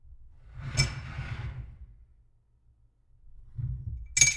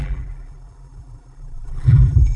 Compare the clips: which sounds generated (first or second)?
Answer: second